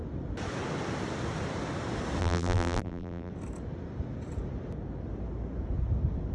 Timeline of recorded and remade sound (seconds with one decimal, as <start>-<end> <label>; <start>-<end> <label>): 0.0-2.2 recorded; 2.2-3.3 remade; 3.3-6.3 recorded